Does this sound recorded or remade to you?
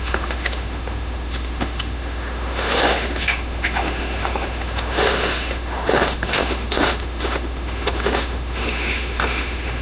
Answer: remade